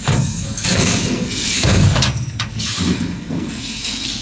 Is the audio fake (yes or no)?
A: yes